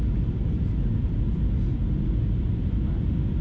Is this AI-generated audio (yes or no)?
no